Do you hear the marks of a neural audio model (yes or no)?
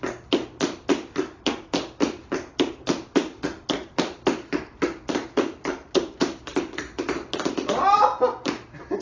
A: no